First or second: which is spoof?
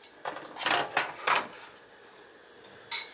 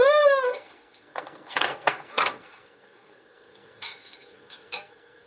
second